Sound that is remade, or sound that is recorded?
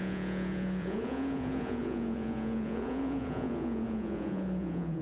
remade